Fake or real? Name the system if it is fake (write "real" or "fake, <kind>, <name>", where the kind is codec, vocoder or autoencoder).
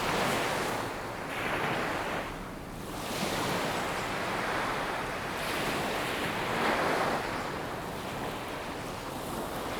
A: real